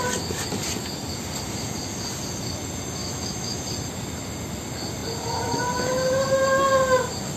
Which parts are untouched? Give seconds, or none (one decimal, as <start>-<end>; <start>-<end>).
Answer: 0.0-3.0; 3.6-7.4